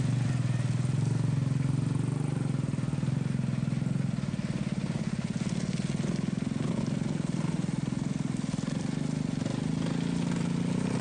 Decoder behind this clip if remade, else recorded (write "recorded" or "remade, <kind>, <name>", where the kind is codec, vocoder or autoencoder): recorded